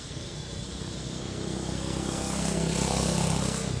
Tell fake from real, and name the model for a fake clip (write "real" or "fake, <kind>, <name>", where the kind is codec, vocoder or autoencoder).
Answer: fake, codec, SNAC